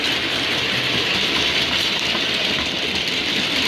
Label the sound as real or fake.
real